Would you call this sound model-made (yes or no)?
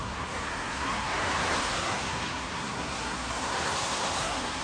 yes